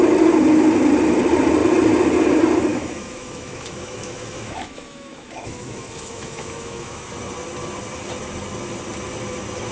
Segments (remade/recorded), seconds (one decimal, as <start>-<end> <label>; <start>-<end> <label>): 0.0-2.7 recorded; 2.7-7.1 remade; 7.1-9.7 recorded